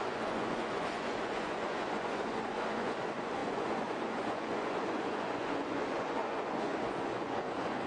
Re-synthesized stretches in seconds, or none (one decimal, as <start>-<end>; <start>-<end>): 0.0-7.9